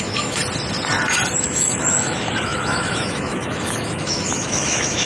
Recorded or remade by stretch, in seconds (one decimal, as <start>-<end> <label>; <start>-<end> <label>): 0.0-0.4 remade; 0.4-1.4 recorded; 1.4-5.1 remade